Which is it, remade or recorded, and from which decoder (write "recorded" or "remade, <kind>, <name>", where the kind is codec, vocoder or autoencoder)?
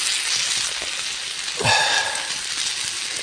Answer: recorded